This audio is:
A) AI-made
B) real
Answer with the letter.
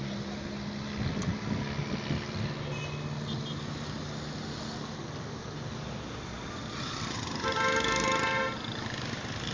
B